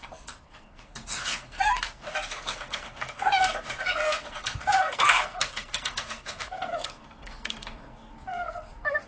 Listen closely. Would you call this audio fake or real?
fake